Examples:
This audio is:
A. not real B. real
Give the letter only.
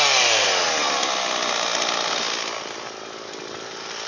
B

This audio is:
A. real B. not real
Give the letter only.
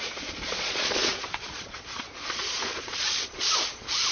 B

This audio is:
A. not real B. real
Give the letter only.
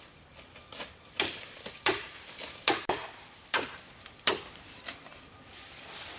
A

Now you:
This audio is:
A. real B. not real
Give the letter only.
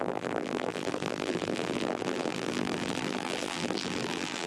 B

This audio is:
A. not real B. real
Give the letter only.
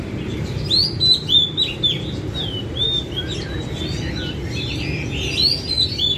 B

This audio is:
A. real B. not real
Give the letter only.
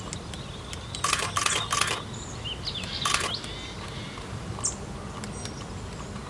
A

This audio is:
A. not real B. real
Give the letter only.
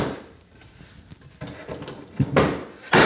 B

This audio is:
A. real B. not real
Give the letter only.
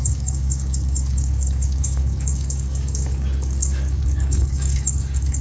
B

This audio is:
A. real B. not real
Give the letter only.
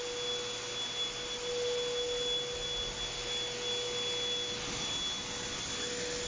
A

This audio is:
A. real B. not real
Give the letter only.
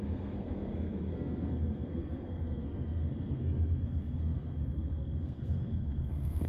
B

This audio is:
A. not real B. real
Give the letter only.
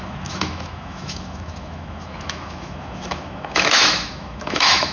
A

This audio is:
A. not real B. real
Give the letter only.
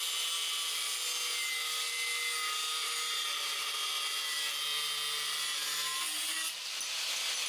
B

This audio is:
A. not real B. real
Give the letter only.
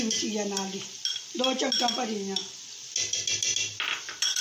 B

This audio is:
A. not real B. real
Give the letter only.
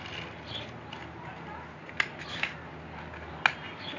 B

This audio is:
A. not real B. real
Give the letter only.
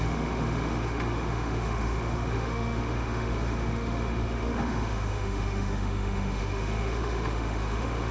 A